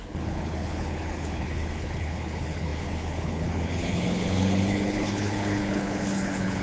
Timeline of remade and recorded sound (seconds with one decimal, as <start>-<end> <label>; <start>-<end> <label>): 0.0-6.6 remade